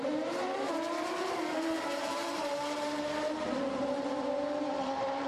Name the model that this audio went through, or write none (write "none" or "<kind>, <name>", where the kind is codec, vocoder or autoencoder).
vocoder, BigVGAN v2